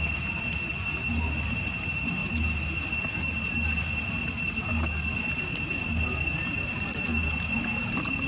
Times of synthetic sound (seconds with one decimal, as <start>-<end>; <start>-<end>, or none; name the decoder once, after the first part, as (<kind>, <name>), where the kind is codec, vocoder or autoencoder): none